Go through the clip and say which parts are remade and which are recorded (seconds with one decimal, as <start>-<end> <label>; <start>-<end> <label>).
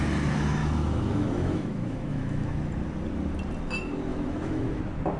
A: 0.0-0.6 recorded; 0.6-2.7 remade; 2.7-4.1 recorded; 4.1-4.8 remade; 4.8-5.2 recorded